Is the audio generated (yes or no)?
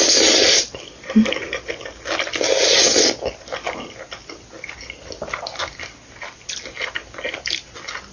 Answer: no